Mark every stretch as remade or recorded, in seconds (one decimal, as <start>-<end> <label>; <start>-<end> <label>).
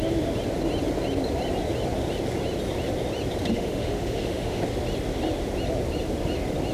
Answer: 0.0-3.5 recorded; 3.5-4.6 remade; 4.6-6.7 recorded